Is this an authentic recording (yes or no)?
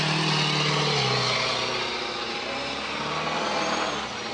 yes